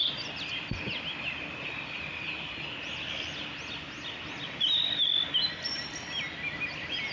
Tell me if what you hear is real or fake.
real